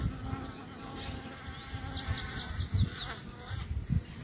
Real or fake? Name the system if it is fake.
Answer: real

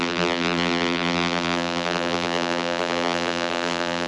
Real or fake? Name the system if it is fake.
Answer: fake, vocoder, BigVGAN v2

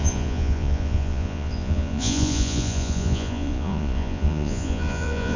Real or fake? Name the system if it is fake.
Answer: fake, vocoder, Vocos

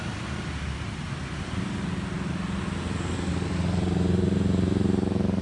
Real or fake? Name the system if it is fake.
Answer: real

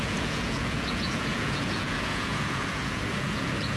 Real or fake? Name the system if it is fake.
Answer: fake, vocoder, Vocos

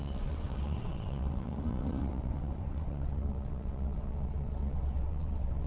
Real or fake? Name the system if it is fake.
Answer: fake, vocoder, WaveNeXt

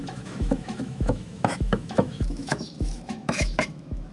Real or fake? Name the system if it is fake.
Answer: fake, autoencoder, DAC-VAE